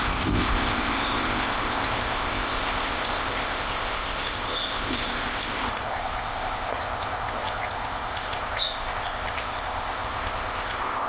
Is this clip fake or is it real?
fake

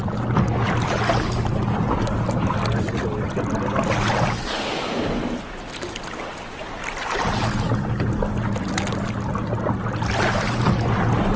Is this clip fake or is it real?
real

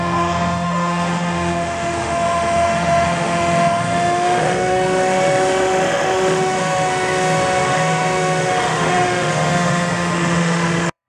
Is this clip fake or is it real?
fake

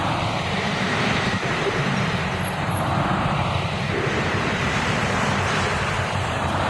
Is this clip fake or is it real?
fake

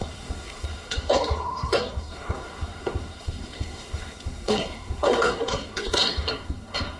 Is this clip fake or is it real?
fake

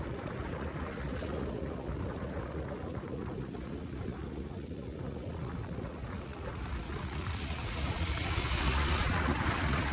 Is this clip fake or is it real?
fake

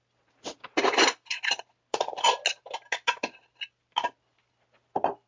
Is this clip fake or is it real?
real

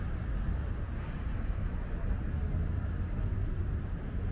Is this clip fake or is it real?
real